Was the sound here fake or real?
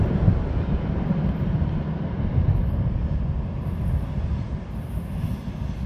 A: real